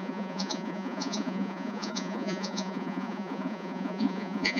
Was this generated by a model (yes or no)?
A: yes